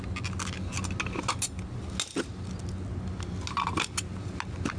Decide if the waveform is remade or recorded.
recorded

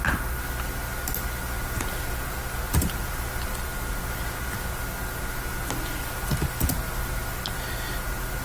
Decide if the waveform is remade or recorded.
recorded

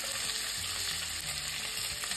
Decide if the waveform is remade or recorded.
recorded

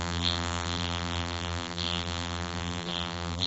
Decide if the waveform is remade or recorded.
remade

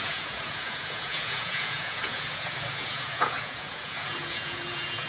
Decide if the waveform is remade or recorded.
remade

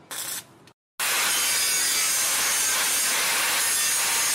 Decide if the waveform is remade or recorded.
recorded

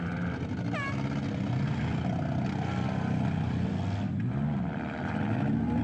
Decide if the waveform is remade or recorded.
recorded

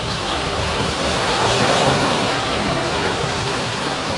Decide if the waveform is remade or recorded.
remade